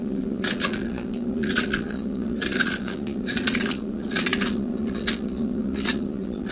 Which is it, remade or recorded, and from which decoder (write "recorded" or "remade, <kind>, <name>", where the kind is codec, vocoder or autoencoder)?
remade, vocoder, Vocos